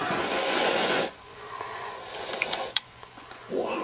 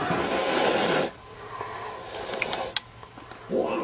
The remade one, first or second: first